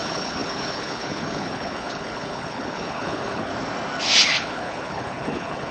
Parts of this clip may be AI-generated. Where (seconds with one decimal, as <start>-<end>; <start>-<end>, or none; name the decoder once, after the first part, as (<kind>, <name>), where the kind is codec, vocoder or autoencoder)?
0.0-3.5 (codec, HILCodec); 4.2-5.7